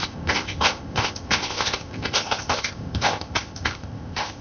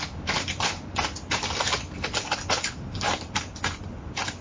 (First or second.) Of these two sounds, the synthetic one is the first